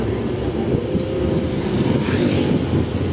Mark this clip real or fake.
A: real